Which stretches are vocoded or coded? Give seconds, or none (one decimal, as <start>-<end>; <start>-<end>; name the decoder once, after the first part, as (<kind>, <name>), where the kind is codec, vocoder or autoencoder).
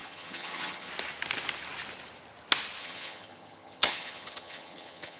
0.0-0.9 (vocoder, HiFi-GAN); 2.8-5.2